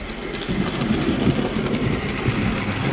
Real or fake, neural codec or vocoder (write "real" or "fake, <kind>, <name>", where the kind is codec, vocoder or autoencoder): real